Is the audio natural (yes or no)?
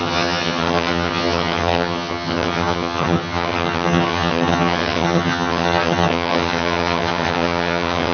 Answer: no